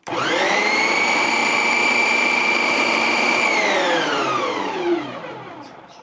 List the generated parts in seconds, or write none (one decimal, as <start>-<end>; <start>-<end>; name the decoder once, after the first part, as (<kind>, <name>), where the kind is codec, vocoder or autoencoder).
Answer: 0.0-6.0 (vocoder, BigVGAN v2)